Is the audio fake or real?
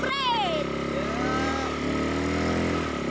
real